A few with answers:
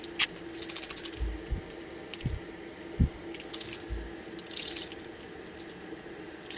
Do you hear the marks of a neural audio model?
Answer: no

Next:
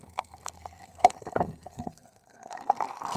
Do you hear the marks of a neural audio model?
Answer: yes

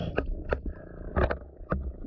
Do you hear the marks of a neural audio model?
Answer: no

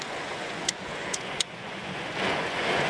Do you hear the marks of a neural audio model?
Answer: yes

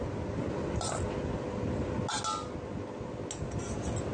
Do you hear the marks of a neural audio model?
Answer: no